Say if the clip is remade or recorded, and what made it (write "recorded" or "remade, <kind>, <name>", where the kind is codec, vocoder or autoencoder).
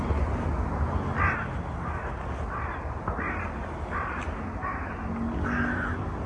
recorded